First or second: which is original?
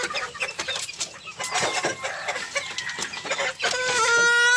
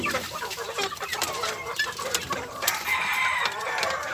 first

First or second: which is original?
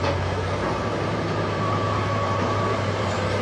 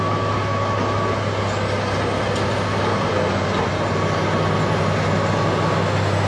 second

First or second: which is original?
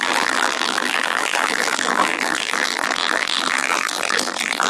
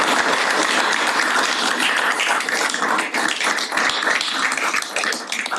second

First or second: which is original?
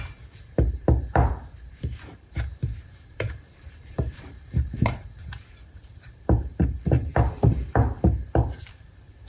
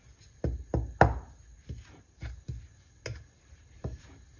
second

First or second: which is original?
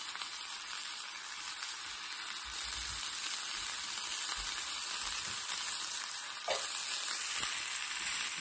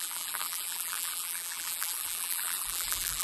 first